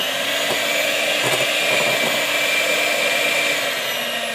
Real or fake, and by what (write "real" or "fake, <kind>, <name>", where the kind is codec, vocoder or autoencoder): real